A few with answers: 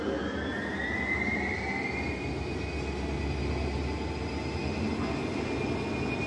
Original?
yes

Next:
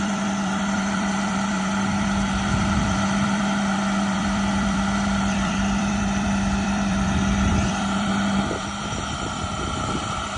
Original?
no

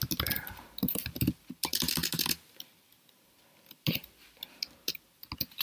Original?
yes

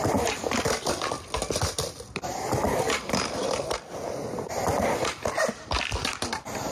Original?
yes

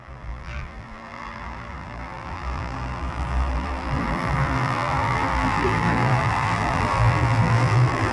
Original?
no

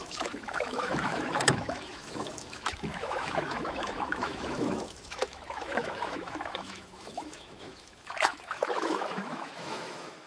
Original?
no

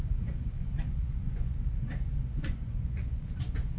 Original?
no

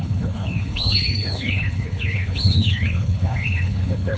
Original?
no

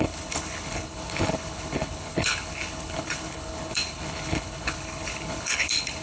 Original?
no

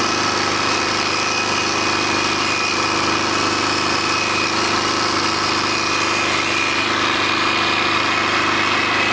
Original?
yes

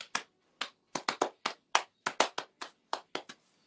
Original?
yes